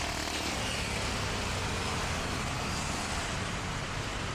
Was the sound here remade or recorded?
recorded